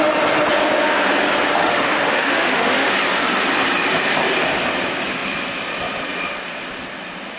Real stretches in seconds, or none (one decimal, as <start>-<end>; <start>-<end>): 0.0-1.6; 2.9-7.4